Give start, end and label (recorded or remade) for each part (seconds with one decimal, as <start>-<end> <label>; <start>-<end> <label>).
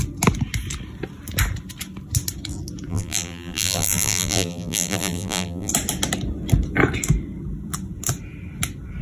0.0-2.9 recorded; 2.9-5.7 remade; 5.7-9.0 recorded